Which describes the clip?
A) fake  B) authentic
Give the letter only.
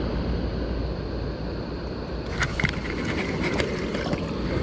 B